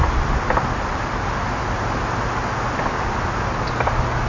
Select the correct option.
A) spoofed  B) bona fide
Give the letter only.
B